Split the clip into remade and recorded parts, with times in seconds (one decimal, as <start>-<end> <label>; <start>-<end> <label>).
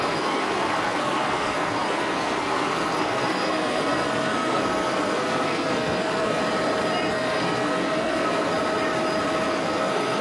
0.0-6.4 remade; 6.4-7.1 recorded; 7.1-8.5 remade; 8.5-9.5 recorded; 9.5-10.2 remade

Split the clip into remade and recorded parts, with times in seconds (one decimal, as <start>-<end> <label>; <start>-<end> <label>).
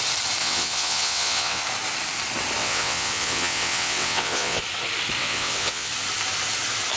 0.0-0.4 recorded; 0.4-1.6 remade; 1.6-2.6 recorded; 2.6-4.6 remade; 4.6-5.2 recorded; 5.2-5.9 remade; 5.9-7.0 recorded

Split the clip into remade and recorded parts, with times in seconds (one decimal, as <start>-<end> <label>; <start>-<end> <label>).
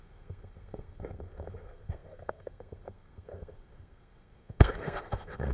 0.0-5.5 remade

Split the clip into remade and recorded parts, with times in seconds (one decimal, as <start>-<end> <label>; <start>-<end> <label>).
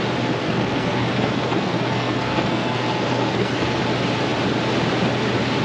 0.0-0.4 recorded; 0.4-3.8 remade; 3.8-5.6 recorded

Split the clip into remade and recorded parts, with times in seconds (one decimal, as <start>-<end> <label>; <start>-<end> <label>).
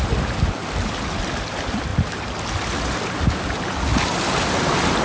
0.0-1.9 remade; 1.9-5.0 recorded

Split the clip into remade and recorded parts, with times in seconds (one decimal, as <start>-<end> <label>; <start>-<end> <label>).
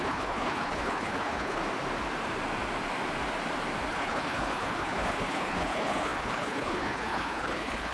0.0-1.6 remade; 1.6-3.9 recorded; 3.9-7.9 remade